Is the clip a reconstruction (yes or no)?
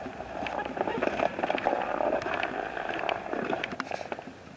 no